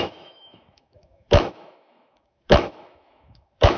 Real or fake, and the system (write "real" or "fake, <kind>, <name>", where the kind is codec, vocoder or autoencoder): fake, autoencoder, DAC-VAE